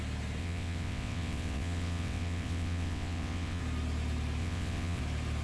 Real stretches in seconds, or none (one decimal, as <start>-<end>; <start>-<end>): 0.0-0.4; 3.6-4.4; 5.0-5.4